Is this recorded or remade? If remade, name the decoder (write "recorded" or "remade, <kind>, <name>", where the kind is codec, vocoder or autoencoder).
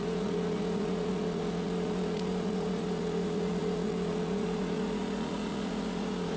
remade, vocoder, Vocos